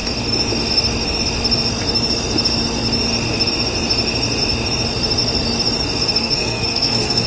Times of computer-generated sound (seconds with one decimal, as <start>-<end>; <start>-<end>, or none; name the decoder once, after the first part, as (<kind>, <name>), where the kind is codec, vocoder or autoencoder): 6.2-7.3 (codec, SNAC)